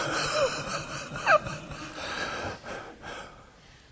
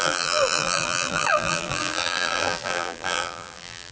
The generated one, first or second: second